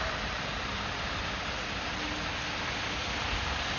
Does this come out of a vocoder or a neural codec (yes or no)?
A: no